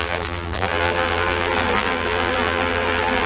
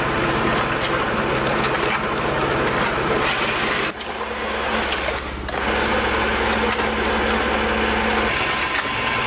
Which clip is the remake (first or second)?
first